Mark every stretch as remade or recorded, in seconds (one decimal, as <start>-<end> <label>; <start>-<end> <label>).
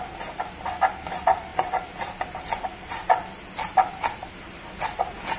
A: 0.0-5.4 recorded